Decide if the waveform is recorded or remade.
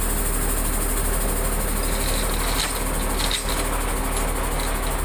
recorded